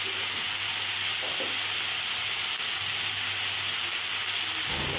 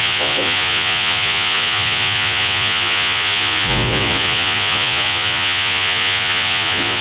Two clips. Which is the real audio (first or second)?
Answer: first